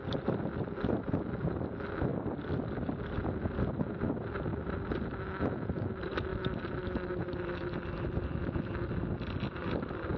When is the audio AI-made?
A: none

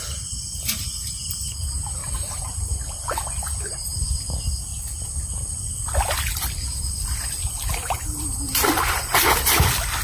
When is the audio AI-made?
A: 2.0-2.7

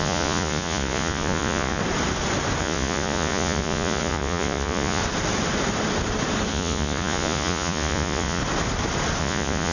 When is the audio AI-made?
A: 0.0-1.8; 2.6-5.0; 6.5-8.4; 9.2-9.7

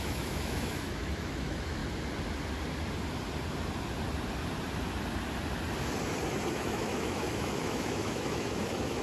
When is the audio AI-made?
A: 0.0-1.8; 6.5-9.0

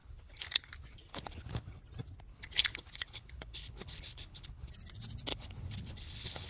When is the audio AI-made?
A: 0.0-0.7; 1.1-1.8; 2.3-4.7; 5.3-6.5

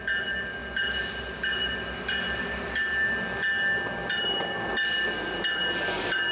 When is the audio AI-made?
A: none

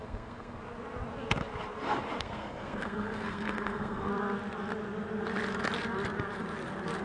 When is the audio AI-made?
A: 0.0-0.6; 2.2-4.1

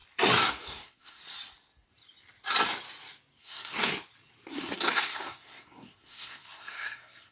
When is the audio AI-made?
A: 0.5-1.2; 3.4-3.9; 4.5-7.3